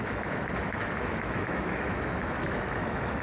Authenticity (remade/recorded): remade